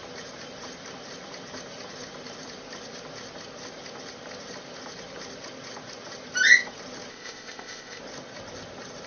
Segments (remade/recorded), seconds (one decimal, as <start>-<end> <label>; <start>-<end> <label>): 0.0-7.1 recorded; 7.1-8.0 remade; 8.0-9.1 recorded